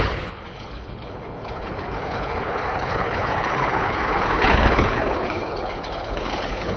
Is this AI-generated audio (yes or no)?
yes